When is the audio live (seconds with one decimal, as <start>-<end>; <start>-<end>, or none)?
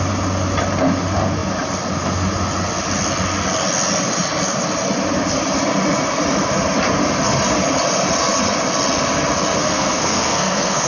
0.0-9.6